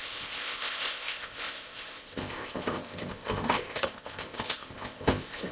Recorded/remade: remade